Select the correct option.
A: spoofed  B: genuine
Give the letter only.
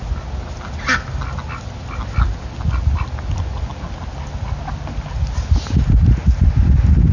B